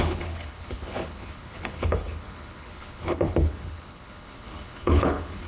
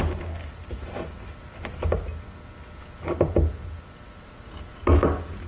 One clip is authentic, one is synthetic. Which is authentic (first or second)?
second